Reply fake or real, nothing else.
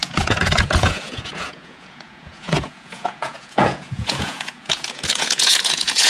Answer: fake